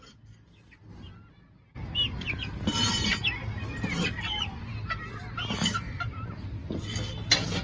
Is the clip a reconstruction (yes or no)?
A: no